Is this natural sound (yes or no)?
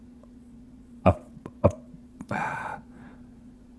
no